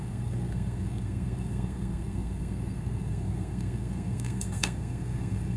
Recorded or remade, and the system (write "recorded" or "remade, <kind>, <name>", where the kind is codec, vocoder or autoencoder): remade, codec, SNAC